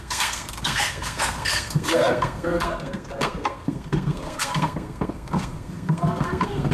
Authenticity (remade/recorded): remade